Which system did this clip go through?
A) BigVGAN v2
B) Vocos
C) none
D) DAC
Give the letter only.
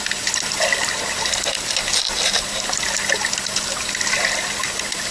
C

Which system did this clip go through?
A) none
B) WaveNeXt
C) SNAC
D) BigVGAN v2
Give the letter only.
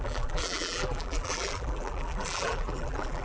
D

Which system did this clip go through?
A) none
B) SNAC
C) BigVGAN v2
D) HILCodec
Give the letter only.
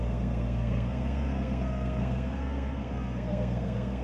B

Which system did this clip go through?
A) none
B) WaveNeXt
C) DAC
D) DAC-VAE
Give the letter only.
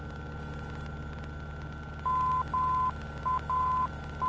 A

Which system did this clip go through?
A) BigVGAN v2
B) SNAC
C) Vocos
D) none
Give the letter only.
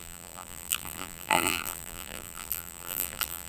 A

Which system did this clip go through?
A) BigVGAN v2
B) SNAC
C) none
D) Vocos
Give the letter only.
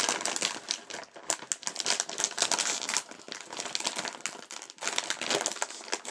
C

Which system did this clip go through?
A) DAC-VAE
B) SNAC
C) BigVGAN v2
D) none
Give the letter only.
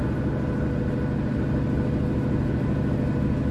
D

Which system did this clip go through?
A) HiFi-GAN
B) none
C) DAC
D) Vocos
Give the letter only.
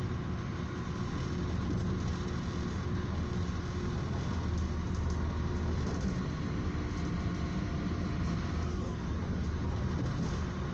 B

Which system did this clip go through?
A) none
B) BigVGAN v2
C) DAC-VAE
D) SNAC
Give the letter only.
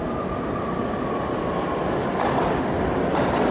A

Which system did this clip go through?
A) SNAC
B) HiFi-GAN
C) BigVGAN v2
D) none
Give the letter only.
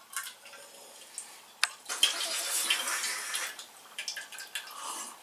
D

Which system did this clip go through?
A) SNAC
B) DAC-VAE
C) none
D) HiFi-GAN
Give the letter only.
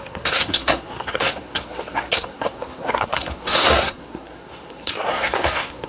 A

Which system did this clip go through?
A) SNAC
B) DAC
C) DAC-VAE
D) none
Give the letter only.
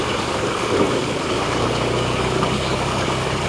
B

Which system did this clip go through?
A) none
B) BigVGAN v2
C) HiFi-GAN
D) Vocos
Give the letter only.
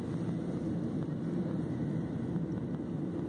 A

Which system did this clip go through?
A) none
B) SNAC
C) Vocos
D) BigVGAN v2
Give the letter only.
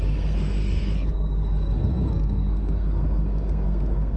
B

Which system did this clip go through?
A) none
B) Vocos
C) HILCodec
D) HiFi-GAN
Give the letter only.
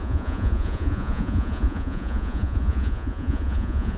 B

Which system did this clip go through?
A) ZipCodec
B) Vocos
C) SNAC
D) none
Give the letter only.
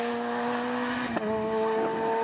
D